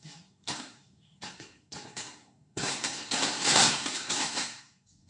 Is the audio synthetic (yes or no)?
yes